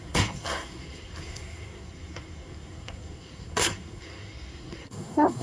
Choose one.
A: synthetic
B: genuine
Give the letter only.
A